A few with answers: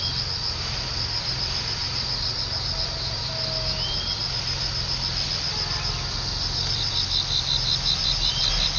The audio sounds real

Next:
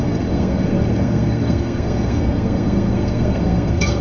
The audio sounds fake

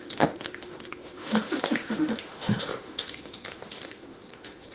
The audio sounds fake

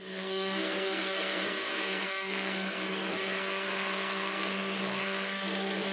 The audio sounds fake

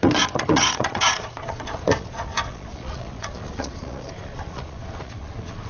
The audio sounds fake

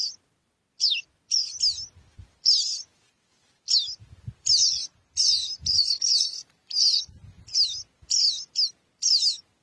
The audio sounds real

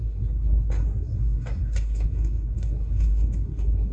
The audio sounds fake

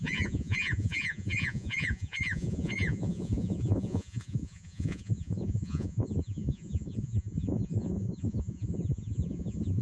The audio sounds fake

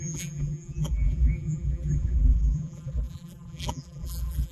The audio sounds fake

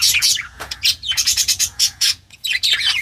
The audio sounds fake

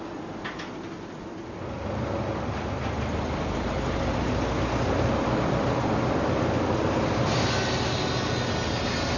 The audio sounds real